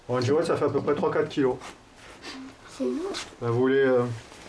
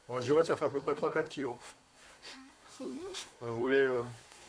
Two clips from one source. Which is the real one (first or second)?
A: first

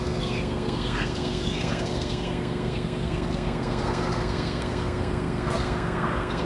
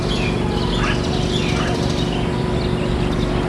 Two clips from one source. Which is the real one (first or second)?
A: second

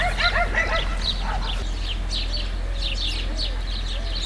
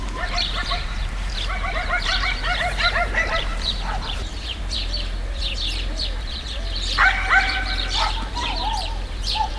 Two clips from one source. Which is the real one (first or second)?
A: first